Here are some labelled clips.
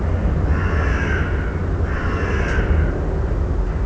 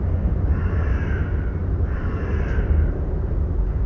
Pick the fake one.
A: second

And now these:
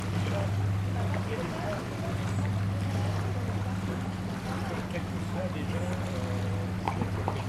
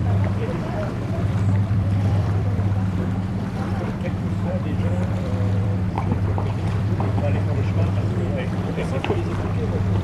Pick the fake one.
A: second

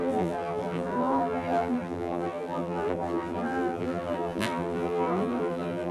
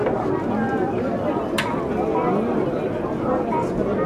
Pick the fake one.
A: first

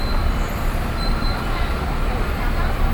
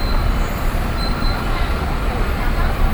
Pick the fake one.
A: second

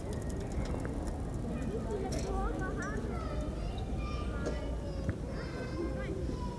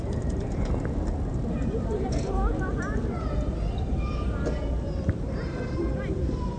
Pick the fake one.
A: second